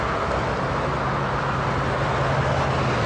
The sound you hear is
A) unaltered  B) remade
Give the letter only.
A